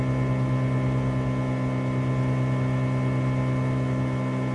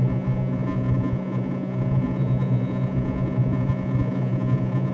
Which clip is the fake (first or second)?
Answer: second